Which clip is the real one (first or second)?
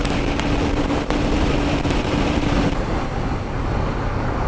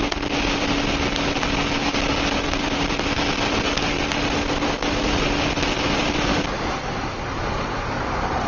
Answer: second